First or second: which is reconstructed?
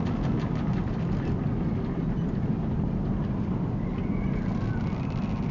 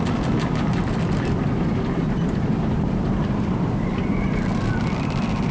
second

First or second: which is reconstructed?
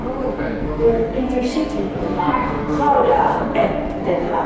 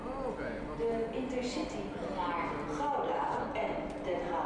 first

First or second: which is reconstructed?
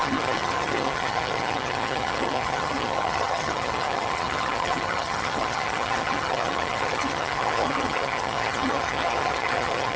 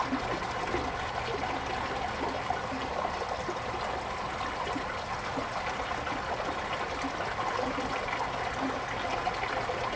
first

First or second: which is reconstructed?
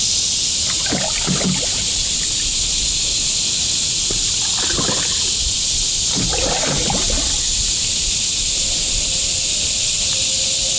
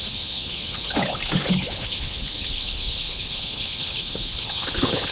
second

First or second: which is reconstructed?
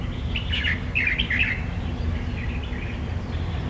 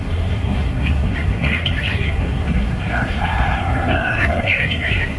second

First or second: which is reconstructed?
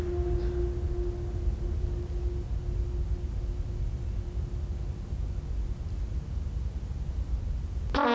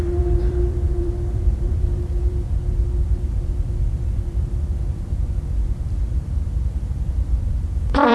second